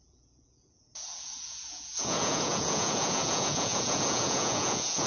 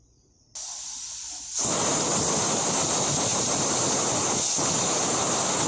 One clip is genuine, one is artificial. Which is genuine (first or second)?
second